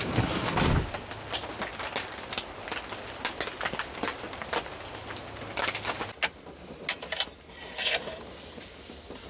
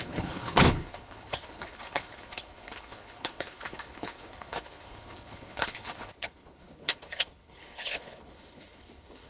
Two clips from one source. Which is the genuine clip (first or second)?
first